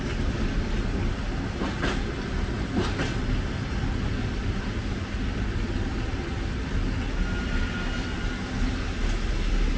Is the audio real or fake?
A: real